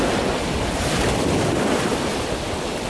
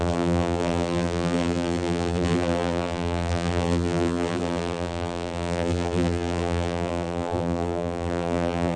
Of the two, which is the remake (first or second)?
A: second